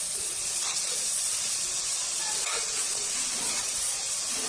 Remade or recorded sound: remade